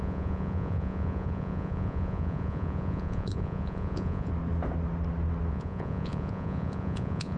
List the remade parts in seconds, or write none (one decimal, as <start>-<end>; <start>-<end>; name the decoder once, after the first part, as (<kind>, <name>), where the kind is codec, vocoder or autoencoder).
0.0-4.3 (vocoder, Vocos); 5.5-7.4